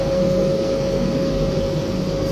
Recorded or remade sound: remade